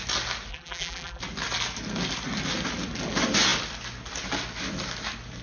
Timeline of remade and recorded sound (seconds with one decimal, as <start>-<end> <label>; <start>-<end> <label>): 0.0-0.5 recorded; 0.5-1.2 remade; 1.2-5.4 recorded